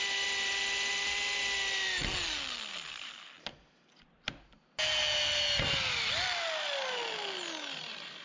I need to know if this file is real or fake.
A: real